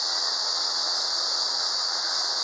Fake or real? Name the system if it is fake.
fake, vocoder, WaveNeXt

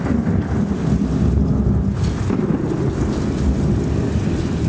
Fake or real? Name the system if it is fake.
real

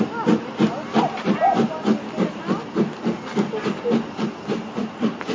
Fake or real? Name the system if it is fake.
real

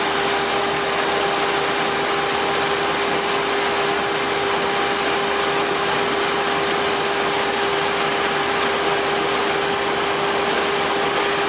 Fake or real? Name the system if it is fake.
real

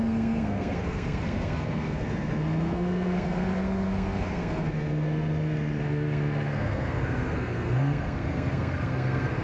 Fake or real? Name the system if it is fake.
fake, codec, SNAC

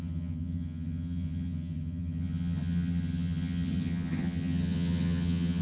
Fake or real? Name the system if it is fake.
fake, vocoder, HiFi-GAN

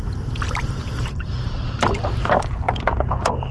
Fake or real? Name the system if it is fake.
fake, vocoder, BigVGAN v2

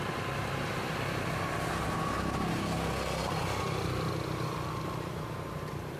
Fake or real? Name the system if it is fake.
real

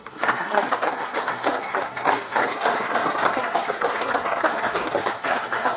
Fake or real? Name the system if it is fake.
fake, codec, SNAC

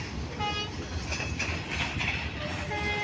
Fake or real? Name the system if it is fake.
real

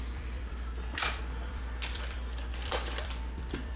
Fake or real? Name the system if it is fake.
fake, vocoder, BigVGAN v2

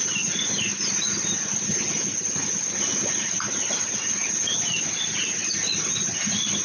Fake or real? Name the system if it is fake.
real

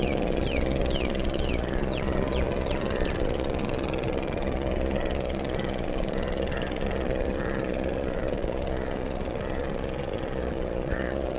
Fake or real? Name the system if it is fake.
fake, vocoder, Vocos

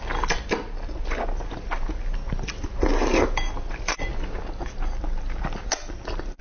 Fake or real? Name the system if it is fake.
real